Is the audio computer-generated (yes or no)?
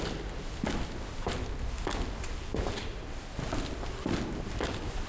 no